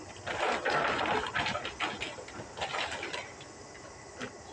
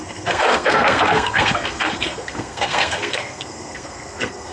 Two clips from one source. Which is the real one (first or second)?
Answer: first